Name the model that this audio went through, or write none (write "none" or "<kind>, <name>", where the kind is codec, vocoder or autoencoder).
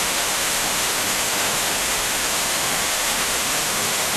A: autoencoder, DAC-VAE